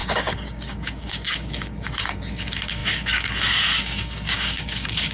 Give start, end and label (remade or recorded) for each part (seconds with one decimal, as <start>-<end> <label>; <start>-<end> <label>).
0.0-5.1 remade